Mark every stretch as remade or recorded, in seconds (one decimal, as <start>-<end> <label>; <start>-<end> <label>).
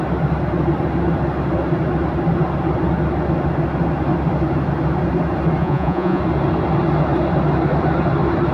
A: 0.0-5.6 recorded; 5.6-6.2 remade; 6.2-8.5 recorded